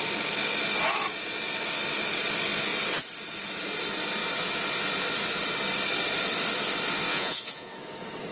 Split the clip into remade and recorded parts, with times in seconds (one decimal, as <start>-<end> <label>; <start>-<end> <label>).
0.0-7.1 recorded; 7.1-7.7 remade; 7.7-8.3 recorded